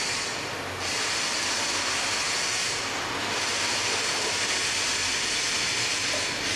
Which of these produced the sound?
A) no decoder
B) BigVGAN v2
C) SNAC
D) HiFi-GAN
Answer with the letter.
B